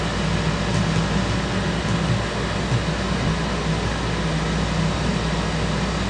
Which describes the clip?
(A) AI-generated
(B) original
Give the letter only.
B